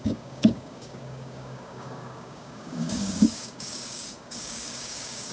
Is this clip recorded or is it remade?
remade